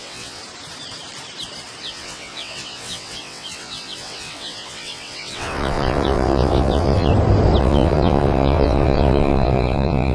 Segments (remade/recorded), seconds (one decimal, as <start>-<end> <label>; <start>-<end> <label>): 0.0-0.4 remade; 0.4-1.8 recorded; 1.8-7.1 remade; 7.1-7.6 recorded; 7.6-10.1 remade

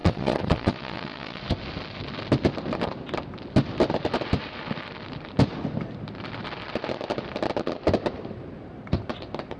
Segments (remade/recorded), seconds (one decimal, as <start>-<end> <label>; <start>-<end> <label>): 0.0-1.4 remade; 1.4-9.6 recorded

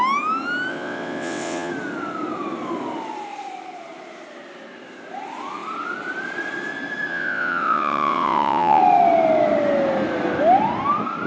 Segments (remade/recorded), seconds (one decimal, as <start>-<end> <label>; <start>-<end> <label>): 0.0-0.7 recorded; 0.7-1.7 remade; 1.7-7.1 recorded; 7.1-8.8 remade; 8.8-11.3 recorded

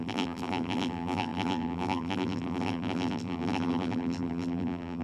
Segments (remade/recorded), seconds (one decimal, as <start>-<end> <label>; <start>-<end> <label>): 0.0-5.0 remade

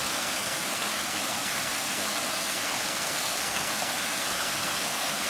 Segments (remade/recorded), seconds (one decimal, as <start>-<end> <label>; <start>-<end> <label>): 0.0-5.3 remade

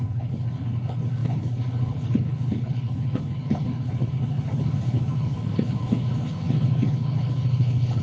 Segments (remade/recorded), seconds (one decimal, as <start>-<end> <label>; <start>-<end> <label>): 0.0-8.0 remade